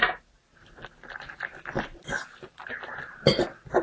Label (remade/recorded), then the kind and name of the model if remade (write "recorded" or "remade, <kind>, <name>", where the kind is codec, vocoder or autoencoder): recorded